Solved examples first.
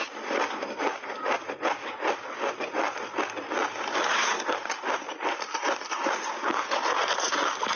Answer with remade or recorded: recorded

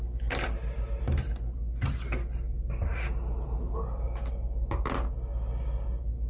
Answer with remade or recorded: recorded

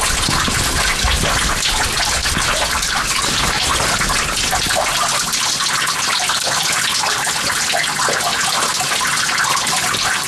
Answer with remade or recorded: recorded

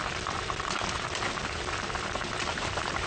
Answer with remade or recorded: recorded